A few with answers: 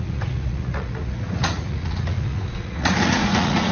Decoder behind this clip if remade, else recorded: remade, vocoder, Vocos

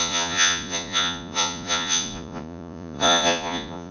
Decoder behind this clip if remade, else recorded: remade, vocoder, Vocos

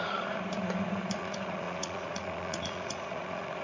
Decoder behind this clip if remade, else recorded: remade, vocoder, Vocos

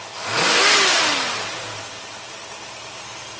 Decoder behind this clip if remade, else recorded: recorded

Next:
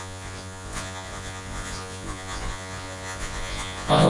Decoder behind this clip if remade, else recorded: remade, vocoder, Vocos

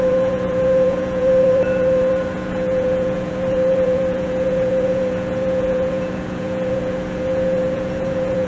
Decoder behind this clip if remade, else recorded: remade, vocoder, Vocos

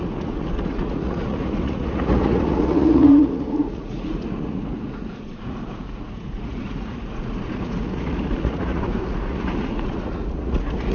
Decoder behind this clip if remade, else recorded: remade, vocoder, Vocos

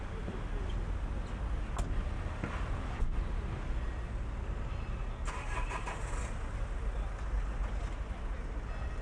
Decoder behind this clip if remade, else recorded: recorded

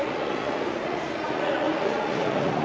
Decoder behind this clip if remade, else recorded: remade, vocoder, Vocos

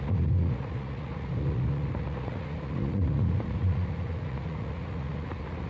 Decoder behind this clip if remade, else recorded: remade, vocoder, Vocos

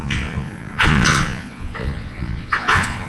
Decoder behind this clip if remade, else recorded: remade, vocoder, Vocos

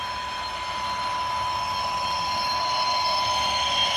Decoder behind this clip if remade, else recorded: recorded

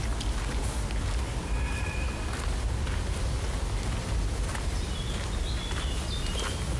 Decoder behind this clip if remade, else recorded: recorded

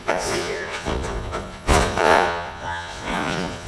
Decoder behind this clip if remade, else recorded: remade, vocoder, Vocos